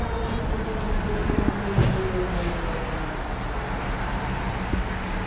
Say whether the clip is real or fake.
real